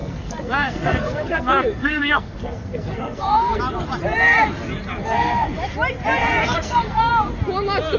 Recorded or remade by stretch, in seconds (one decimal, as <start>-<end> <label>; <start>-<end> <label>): 0.0-3.6 remade; 3.6-5.0 recorded; 5.0-5.6 remade; 5.6-6.4 recorded; 6.4-7.1 remade; 7.1-8.0 recorded